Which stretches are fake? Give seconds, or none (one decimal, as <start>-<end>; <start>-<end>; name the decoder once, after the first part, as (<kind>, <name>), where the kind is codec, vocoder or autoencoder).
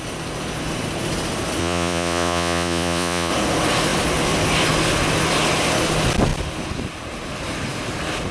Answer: 1.6-3.3 (vocoder, Vocos)